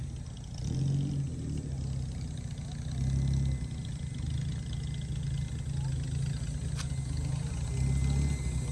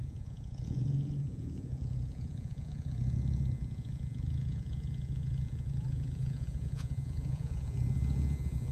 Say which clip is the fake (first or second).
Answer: second